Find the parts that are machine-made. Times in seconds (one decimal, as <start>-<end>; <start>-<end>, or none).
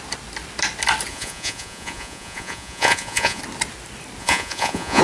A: 1.1-3.4; 4.2-5.0